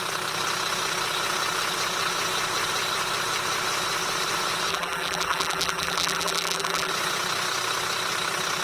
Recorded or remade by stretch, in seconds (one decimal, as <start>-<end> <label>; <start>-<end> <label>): 0.0-4.7 recorded; 4.7-6.9 remade; 6.9-8.6 recorded